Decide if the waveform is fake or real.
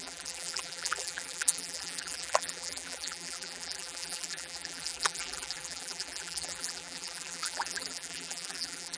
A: fake